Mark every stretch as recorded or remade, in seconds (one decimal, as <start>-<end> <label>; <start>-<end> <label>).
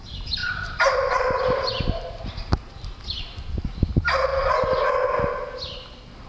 0.0-0.4 recorded; 0.4-2.5 remade; 2.5-6.3 recorded